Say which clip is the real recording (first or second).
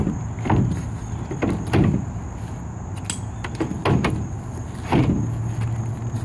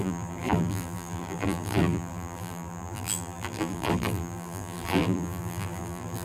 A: first